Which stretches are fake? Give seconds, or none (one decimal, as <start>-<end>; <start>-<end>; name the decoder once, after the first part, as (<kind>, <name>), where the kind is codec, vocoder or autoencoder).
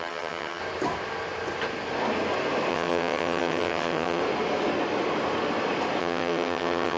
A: 0.0-0.6 (vocoder, HiFi-GAN); 2.7-4.2; 6.0-7.0